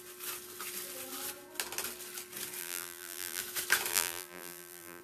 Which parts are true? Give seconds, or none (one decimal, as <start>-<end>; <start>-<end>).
0.0-2.6; 3.4-3.9